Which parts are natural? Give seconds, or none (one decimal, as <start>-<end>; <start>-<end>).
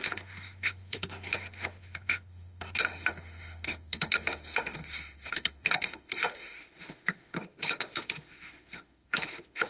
none